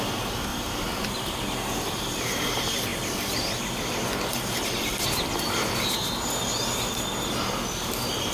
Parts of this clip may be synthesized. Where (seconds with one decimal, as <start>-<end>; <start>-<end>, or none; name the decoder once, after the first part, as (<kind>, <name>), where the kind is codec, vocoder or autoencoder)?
0.5-1.2 (vocoder, BigVGAN v2)